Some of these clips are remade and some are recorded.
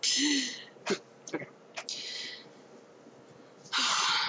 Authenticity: recorded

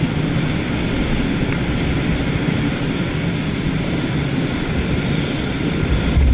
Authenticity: recorded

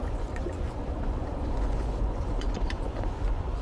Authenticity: remade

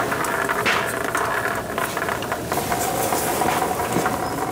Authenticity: recorded